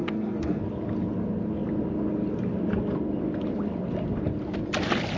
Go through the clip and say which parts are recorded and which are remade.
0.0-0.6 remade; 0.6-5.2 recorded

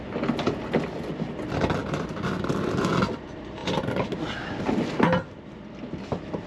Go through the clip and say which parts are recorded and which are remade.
0.0-6.5 recorded

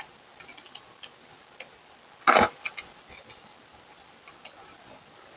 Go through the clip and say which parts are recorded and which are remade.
0.0-5.4 recorded

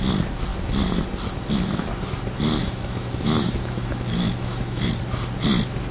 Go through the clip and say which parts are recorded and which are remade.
0.0-2.6 recorded; 2.6-4.9 remade; 4.9-5.9 recorded

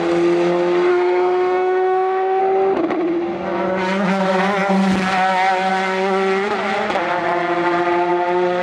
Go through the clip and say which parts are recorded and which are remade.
0.0-0.9 recorded; 0.9-2.4 remade; 2.4-8.6 recorded

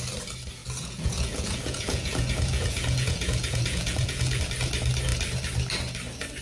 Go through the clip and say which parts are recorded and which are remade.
0.0-0.6 recorded; 0.6-4.4 remade; 4.4-6.4 recorded

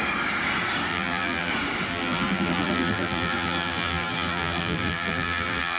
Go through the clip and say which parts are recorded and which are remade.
0.0-0.9 recorded; 0.9-1.5 remade; 1.5-1.9 recorded; 1.9-5.8 remade

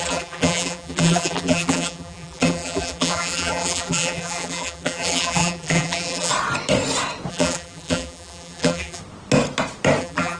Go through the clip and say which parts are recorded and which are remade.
0.0-6.3 remade; 6.3-7.3 recorded; 7.3-9.0 remade; 9.0-10.0 recorded; 10.0-10.4 remade